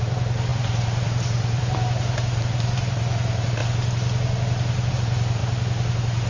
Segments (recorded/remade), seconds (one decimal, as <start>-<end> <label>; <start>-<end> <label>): 0.0-3.6 remade; 3.6-4.9 recorded; 4.9-5.4 remade; 5.4-6.3 recorded